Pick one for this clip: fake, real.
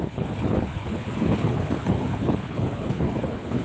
fake